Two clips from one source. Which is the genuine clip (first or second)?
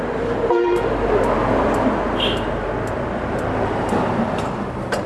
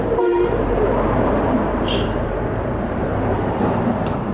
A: first